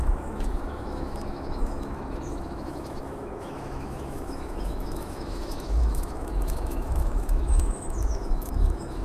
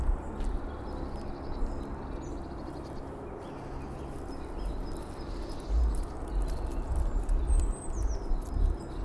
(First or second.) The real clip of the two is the second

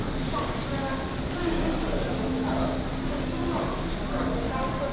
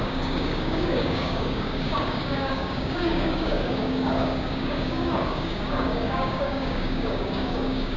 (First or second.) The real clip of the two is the first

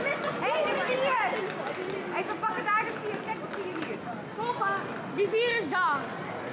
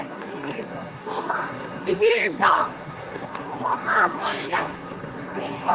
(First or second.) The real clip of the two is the first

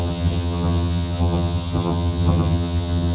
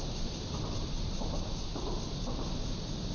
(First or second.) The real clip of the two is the second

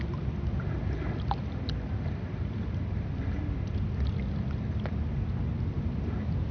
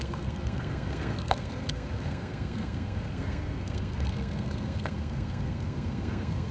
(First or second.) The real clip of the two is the first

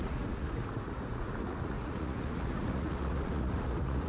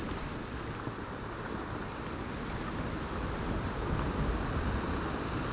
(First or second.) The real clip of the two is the second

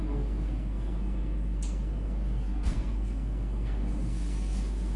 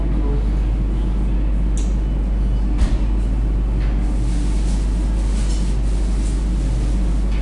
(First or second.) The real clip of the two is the second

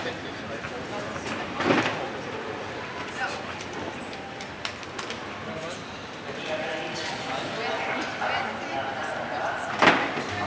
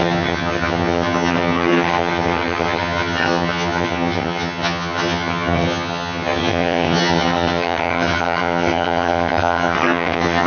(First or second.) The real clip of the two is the first